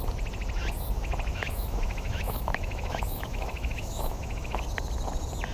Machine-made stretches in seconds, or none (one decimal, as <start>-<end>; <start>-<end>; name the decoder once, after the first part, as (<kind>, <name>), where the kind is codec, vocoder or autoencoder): 1.3-4.6 (autoencoder, DAC-VAE)